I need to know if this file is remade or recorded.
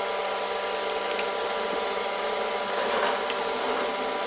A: recorded